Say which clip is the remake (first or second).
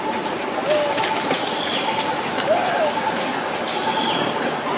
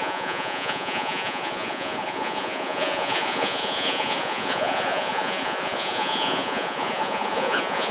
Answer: second